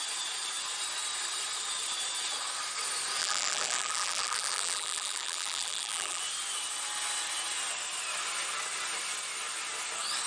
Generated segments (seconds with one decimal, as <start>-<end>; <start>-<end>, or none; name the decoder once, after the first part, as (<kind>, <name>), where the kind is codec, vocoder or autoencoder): 3.2-6.2 (vocoder, BigVGAN v2)